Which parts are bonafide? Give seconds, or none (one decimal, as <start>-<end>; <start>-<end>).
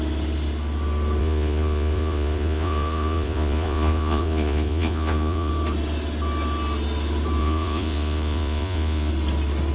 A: 0.0-1.2; 5.5-7.4; 9.1-9.7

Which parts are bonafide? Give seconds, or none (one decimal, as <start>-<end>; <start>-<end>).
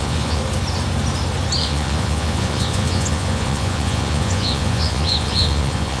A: 0.4-1.6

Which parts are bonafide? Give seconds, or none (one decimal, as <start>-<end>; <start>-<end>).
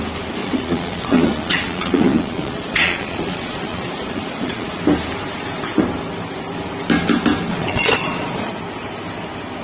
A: 0.0-0.4; 4.8-7.5; 8.5-9.6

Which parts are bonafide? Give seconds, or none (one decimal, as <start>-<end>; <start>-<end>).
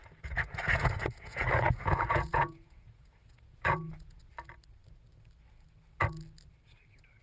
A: 4.3-7.2